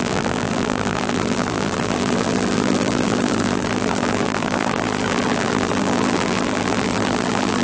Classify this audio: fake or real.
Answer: fake